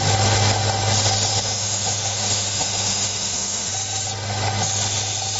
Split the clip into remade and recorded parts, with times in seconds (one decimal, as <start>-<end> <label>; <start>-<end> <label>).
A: 0.0-1.3 recorded; 1.3-3.7 remade; 3.7-5.4 recorded